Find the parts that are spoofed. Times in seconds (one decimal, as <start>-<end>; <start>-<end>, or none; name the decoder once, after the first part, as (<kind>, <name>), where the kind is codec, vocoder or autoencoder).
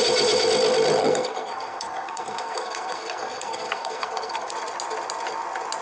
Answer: 1.0-4.5 (codec, SNAC)